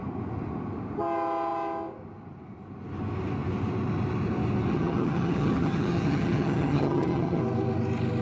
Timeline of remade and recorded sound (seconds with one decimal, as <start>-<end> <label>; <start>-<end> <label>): 0.0-4.7 recorded; 4.7-7.4 remade; 7.4-8.2 recorded